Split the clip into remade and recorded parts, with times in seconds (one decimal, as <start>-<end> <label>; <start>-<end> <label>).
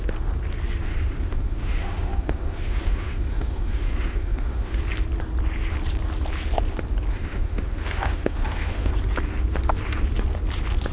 0.0-0.9 recorded; 0.9-4.8 remade; 4.8-7.1 recorded; 7.1-8.9 remade; 8.9-10.9 recorded